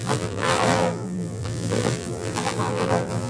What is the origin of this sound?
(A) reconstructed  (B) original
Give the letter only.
A